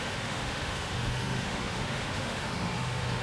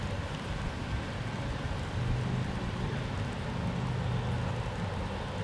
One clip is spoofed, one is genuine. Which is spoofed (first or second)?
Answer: first